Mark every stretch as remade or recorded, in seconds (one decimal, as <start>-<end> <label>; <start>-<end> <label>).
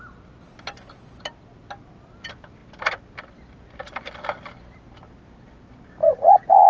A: 0.0-6.0 recorded; 6.0-6.7 remade